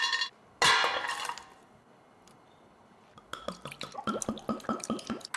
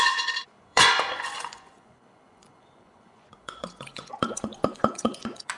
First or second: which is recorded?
first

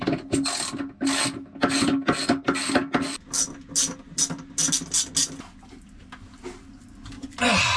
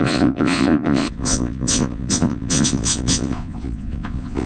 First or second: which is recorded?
first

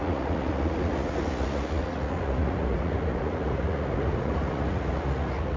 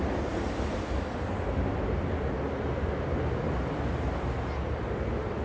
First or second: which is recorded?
second